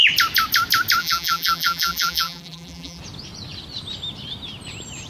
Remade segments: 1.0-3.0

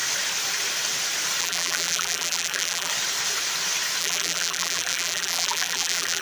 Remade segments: 1.4-2.9; 4.0-6.2

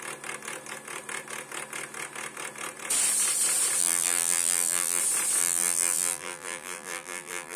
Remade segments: 3.8-5.0; 5.4-7.6

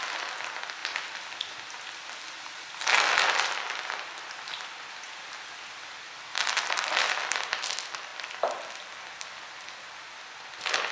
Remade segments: 0.0-0.8; 3.1-10.9

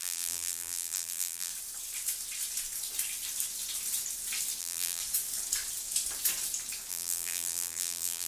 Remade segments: 0.0-1.5; 4.6-5.0; 6.9-8.3

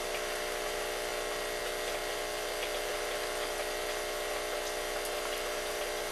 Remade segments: none

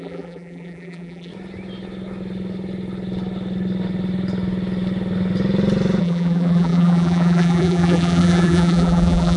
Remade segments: 0.0-1.3; 6.0-9.4

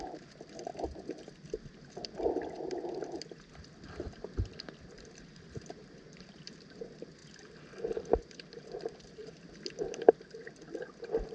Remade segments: 0.0-0.7; 3.9-7.2; 8.2-9.2